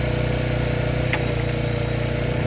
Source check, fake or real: real